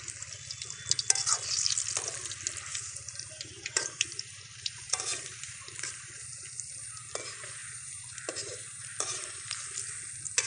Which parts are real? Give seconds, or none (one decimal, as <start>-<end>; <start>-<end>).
0.0-2.7; 6.6-7.6; 9.4-10.5